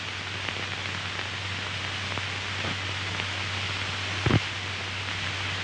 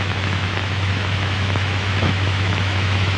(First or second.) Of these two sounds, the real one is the first